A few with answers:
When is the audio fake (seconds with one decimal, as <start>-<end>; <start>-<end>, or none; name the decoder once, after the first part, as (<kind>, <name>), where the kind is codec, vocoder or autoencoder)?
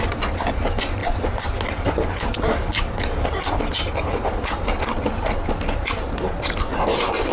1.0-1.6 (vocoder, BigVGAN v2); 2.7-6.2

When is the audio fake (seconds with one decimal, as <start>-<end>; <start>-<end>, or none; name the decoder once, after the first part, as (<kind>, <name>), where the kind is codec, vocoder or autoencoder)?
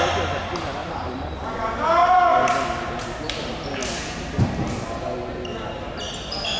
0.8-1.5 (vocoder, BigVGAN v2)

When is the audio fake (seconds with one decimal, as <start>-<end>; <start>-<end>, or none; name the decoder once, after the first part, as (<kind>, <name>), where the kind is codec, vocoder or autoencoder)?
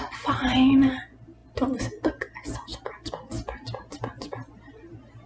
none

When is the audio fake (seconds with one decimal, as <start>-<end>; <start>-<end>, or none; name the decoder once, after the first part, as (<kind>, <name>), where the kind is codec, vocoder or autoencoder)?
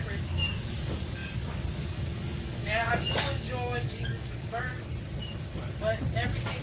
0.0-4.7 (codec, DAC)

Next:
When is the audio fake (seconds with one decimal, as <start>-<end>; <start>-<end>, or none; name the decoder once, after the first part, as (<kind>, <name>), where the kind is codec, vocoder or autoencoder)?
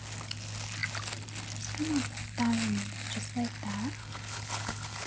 4.0-5.1 (codec, HILCodec)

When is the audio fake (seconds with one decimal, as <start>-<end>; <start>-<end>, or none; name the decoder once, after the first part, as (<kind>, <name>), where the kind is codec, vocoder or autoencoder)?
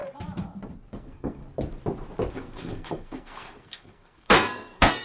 0.9-1.4 (codec, SNAC); 2.3-5.0